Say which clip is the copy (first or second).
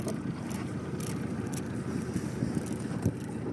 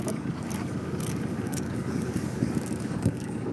second